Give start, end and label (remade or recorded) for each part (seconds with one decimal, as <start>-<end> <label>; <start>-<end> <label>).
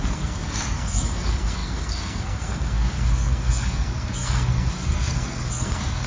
0.0-6.1 remade